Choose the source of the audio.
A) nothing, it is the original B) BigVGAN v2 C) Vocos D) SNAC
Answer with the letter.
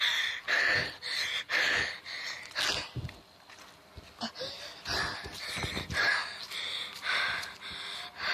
A